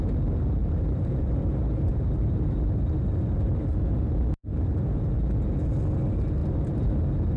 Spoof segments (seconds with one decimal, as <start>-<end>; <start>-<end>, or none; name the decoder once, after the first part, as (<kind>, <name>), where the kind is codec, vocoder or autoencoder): 0.6-5.0 (vocoder, BigVGAN v2); 6.4-7.0